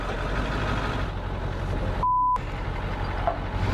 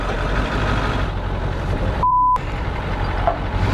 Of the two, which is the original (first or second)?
first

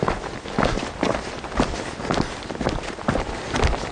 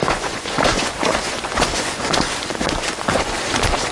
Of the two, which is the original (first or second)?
first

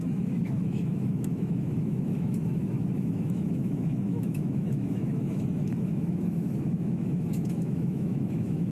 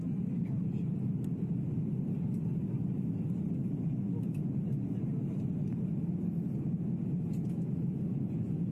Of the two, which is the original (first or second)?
second